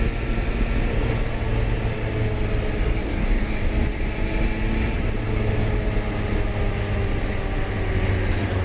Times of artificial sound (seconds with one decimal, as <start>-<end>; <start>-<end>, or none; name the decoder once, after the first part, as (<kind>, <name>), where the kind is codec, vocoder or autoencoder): 3.0-3.7 (codec, DAC)